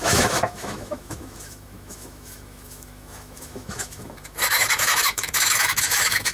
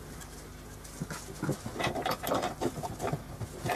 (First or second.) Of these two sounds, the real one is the second